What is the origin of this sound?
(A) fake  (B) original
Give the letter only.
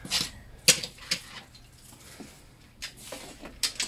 B